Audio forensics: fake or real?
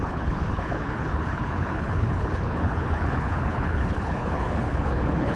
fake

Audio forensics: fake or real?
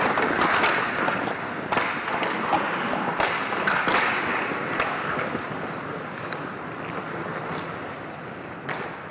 real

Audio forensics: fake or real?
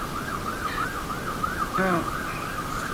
real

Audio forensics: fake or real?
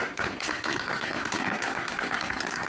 fake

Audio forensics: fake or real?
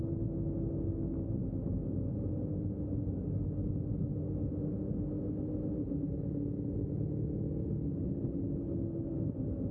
real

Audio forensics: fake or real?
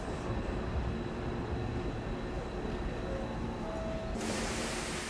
real